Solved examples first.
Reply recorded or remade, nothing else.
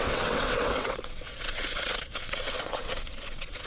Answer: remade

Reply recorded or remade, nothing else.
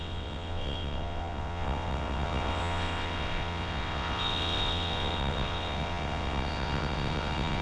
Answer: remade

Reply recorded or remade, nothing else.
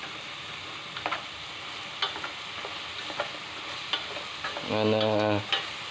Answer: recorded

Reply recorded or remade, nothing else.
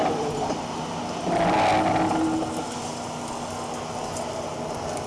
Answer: recorded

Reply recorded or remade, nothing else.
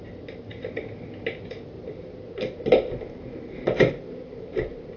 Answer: recorded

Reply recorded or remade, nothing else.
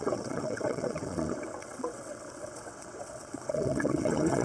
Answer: remade